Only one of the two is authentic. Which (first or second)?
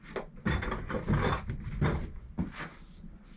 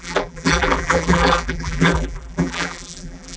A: first